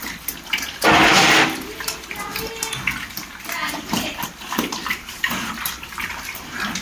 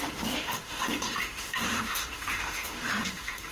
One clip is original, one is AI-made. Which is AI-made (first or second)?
second